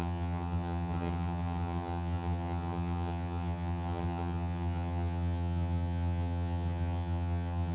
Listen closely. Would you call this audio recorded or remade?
remade